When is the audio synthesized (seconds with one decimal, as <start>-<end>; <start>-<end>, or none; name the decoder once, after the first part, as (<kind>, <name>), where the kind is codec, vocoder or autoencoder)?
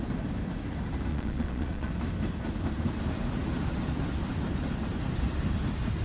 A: 1.1-1.9 (vocoder, Vocos)